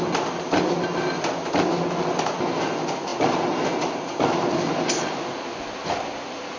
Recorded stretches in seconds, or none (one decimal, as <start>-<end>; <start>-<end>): 0.0-6.6